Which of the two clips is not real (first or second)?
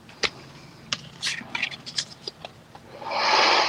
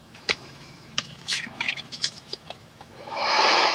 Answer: second